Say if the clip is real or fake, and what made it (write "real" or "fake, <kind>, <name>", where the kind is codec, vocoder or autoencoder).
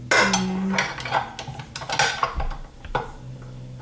real